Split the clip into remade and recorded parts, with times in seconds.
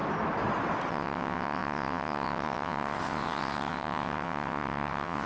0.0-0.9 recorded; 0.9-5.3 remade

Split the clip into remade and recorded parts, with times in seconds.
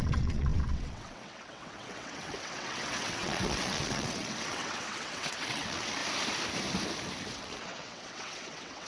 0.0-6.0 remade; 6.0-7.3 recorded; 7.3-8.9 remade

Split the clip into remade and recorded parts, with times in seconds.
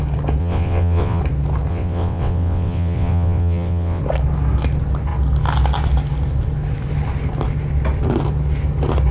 0.0-0.4 recorded; 0.4-1.2 remade; 1.2-1.7 recorded; 1.7-4.0 remade; 4.0-9.1 recorded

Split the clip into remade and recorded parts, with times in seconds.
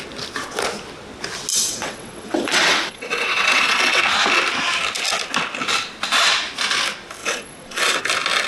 0.0-1.5 recorded; 1.5-4.0 remade; 4.0-7.2 recorded; 7.2-8.0 remade; 8.0-8.5 recorded